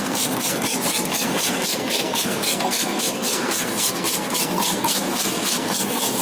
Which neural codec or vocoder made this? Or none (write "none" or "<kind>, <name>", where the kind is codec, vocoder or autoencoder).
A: codec, SNAC